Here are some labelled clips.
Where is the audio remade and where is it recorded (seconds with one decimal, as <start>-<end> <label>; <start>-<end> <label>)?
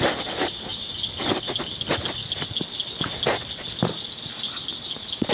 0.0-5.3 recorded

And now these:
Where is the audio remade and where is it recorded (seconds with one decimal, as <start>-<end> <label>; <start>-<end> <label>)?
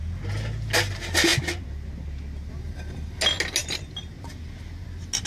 0.0-5.3 recorded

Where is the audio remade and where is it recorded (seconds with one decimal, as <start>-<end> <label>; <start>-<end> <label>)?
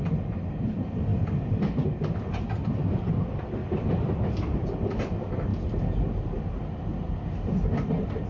0.0-1.1 recorded; 1.1-1.8 remade; 1.8-3.6 recorded; 3.6-4.1 remade; 4.1-8.3 recorded